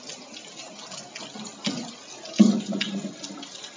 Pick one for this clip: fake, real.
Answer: real